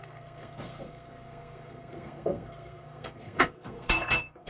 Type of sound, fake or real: fake